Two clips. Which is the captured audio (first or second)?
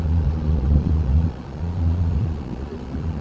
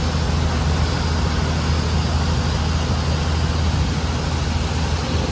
second